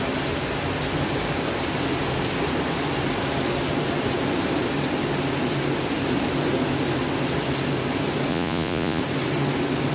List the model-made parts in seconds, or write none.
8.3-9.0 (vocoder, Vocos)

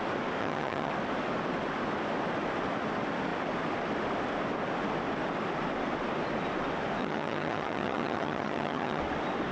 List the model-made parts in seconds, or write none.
0.4-0.9 (vocoder, HiFi-GAN); 7.0-9.0

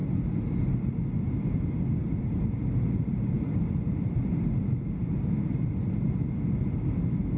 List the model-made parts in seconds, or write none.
0.0-1.0 (vocoder, BigVGAN v2); 2.0-5.7

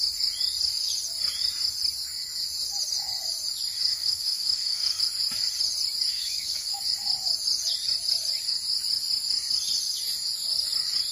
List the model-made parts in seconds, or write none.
3.9-5.0 (codec, DAC); 6.1-6.8